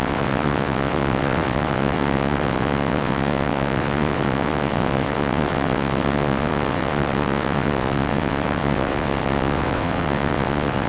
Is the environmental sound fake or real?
fake